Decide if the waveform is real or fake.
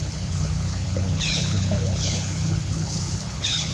fake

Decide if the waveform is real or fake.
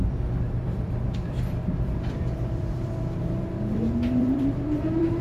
fake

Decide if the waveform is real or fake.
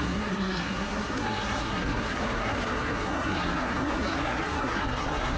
fake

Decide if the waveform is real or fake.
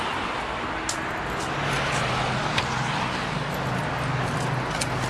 real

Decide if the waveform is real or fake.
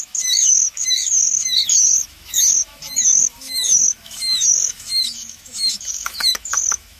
fake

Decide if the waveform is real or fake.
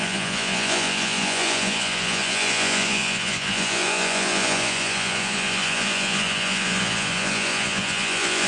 fake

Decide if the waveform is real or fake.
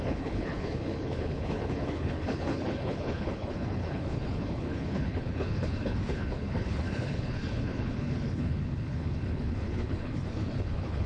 fake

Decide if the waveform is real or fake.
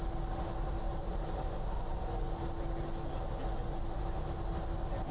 real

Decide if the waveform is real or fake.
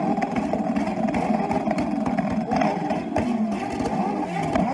real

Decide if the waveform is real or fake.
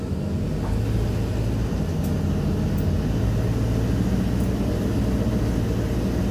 real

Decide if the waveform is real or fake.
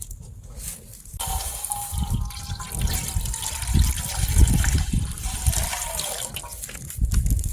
real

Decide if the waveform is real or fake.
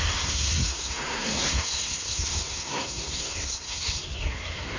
fake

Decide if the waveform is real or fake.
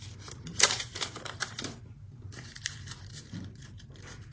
fake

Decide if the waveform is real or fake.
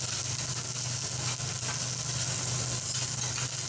real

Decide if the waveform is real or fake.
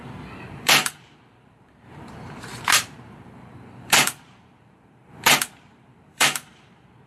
fake